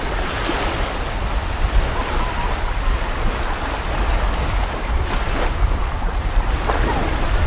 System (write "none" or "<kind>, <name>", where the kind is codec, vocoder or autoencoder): none